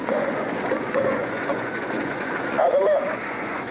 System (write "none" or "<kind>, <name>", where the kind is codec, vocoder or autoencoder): vocoder, Vocos